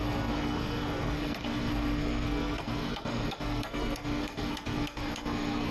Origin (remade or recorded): remade